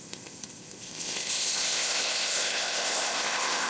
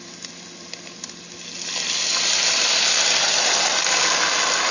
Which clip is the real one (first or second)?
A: second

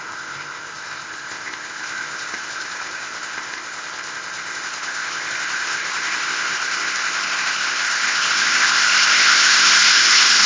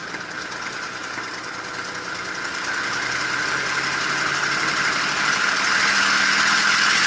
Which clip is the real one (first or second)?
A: second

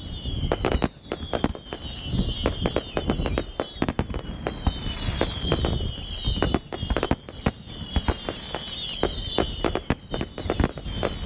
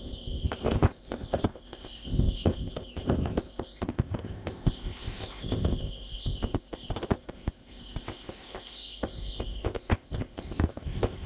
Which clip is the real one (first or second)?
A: first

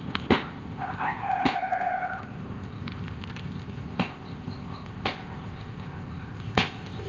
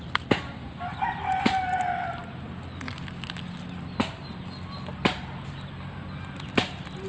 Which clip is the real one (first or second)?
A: second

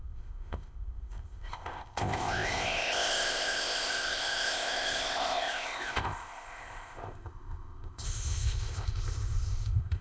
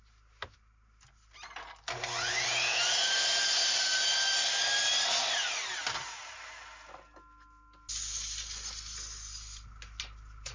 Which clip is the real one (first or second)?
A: second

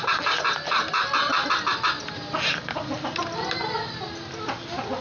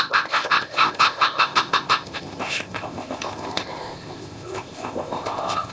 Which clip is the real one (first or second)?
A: first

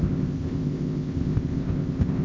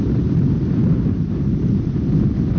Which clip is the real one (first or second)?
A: second